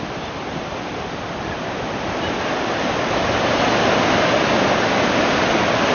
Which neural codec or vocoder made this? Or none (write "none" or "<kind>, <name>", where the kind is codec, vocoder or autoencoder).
none